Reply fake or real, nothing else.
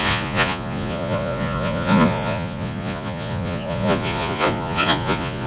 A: fake